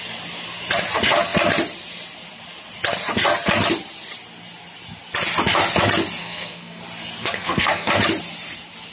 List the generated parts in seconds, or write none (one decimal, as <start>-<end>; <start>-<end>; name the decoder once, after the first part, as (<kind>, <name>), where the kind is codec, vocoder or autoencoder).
6.2-6.8 (codec, SNAC); 7.2-7.9